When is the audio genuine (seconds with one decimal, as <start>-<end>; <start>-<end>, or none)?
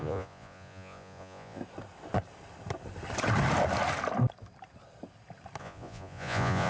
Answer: 1.6-5.6